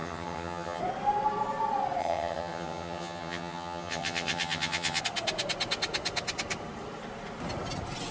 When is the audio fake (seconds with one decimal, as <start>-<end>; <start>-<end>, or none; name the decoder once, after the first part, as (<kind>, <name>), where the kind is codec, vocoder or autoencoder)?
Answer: 0.0-0.8 (vocoder, HiFi-GAN); 2.0-5.0